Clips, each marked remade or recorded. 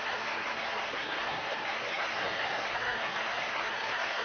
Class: remade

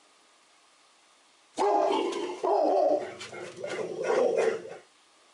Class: recorded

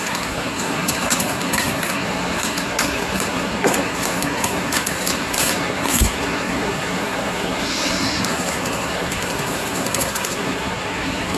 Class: remade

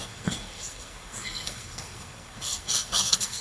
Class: remade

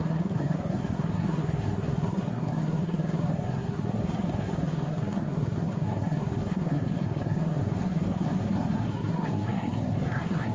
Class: remade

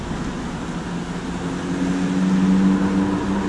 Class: recorded